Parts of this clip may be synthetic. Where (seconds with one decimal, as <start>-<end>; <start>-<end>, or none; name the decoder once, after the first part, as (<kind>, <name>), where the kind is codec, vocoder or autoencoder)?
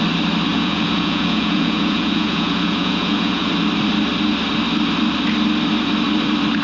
0.5-3.5 (vocoder, Vocos)